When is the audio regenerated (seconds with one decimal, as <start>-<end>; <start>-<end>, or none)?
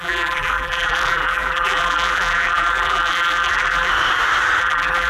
0.0-3.9; 4.6-5.1